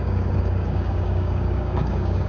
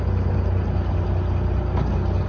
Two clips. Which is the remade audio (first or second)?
first